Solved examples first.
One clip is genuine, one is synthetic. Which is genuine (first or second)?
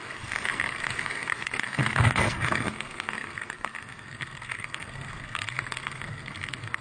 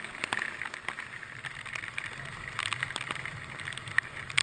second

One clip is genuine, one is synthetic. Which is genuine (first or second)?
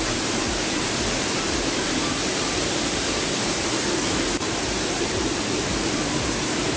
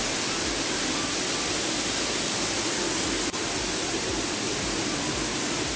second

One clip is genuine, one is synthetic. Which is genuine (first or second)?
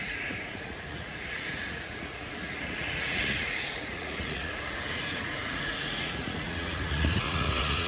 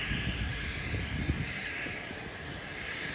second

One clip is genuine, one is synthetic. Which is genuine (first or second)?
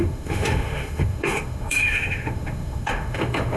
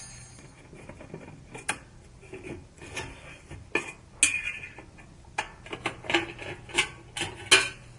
second